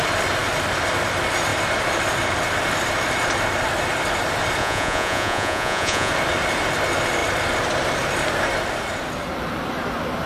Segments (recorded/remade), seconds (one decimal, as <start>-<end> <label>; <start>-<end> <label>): 0.0-4.6 recorded; 4.6-6.1 remade; 6.1-10.3 recorded